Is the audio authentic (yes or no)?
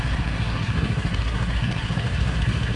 no